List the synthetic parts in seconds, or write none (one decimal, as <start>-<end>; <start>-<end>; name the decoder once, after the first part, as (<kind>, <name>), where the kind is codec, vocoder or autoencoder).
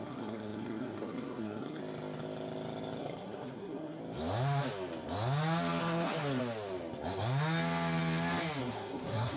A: 0.0-1.8 (codec, SNAC); 3.0-4.0; 5.8-6.4; 8.6-9.4